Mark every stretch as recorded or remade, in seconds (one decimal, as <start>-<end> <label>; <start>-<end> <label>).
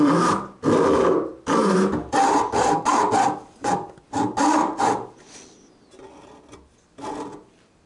0.0-7.9 recorded